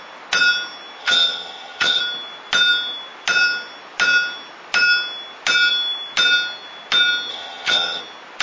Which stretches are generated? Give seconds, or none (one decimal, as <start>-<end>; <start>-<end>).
1.0-2.0; 7.3-8.0

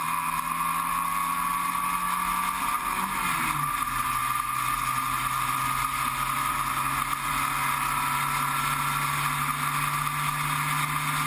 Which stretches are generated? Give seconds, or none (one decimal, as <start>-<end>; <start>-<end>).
none

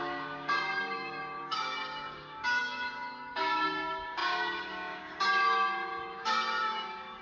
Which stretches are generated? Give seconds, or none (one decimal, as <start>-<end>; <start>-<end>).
0.0-7.2

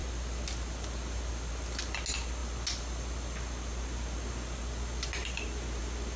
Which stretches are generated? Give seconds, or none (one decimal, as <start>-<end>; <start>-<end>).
none

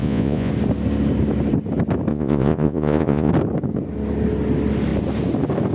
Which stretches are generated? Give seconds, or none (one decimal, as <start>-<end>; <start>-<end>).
0.0-0.5; 2.1-3.3

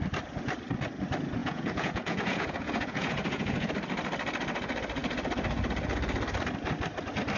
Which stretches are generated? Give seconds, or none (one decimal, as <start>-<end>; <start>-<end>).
1.4-3.7